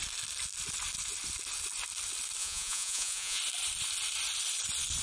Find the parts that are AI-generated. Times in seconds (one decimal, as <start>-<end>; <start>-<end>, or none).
2.4-3.4